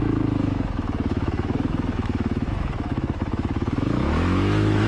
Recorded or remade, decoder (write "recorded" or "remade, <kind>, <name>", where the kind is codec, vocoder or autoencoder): remade, autoencoder, DAC-VAE